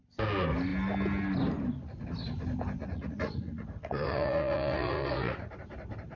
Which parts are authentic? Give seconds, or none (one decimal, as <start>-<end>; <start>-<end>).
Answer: 0.0-2.8; 5.5-6.2